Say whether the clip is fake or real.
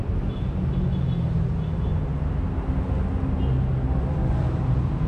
real